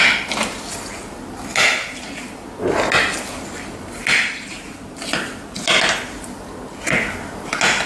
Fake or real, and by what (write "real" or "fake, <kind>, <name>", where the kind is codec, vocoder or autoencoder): real